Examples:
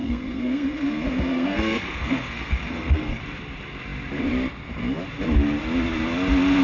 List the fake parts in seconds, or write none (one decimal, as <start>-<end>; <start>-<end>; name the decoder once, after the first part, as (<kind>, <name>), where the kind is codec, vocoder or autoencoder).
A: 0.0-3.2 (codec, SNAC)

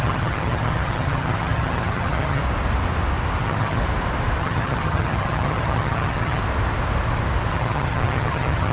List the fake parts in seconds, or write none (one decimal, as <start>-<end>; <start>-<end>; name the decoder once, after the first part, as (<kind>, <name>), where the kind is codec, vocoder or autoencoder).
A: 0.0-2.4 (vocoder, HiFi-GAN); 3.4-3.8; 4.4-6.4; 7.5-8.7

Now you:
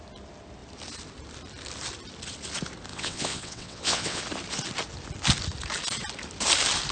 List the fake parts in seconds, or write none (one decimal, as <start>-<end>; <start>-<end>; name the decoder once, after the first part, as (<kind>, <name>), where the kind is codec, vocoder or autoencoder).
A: 2.9-4.2 (vocoder, WaveNeXt)